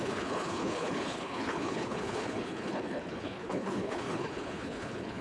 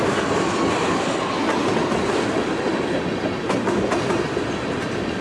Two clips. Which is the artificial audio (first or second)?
first